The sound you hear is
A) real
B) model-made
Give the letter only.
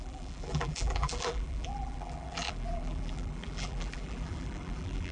B